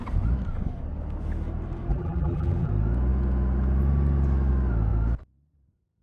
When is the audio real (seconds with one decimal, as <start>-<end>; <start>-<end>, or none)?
0.0-1.9; 2.7-6.0